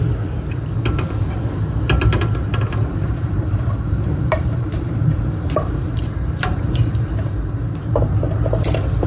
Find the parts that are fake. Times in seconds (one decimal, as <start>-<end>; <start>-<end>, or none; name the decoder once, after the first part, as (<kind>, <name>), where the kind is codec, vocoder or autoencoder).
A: 2.8-7.6 (vocoder, BigVGAN v2)